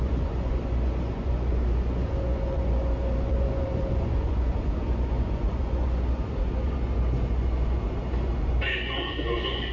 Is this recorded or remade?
remade